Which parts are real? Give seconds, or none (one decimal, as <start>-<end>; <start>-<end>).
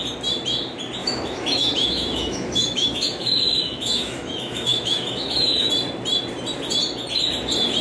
0.0-1.0; 5.7-7.8